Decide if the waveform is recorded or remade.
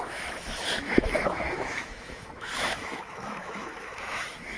remade